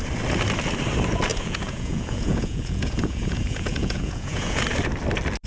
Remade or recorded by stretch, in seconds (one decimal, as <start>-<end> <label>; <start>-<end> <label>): 0.0-1.3 recorded; 1.3-4.6 remade; 4.6-5.5 recorded